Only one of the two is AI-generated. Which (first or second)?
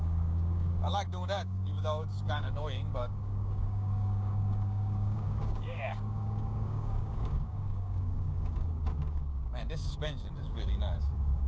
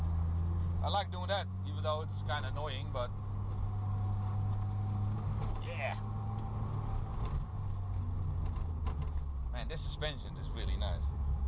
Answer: first